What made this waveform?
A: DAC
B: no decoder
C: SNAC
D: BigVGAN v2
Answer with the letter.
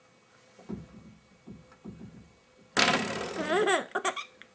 B